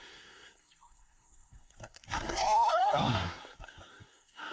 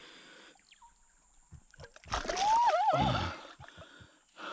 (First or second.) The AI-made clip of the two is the first